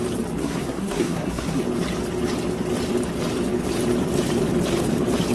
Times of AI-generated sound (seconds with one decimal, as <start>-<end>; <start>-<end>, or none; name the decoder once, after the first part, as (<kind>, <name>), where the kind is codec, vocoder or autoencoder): 0.4-1.6 (codec, SNAC)